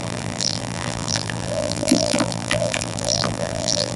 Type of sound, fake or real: fake